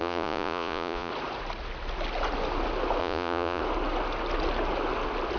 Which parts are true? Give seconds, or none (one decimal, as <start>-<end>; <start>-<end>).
1.1-3.0; 3.6-5.4